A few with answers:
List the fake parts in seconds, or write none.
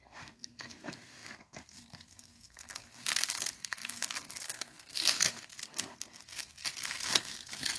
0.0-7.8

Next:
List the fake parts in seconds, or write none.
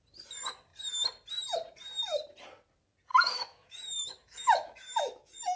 3.1-5.6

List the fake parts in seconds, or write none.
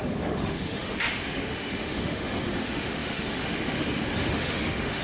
0.0-5.0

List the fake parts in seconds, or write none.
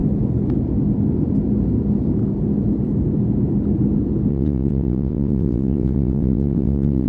4.3-7.1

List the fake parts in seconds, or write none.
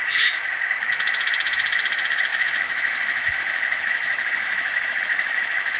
0.0-5.8